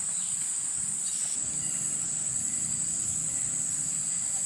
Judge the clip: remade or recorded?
recorded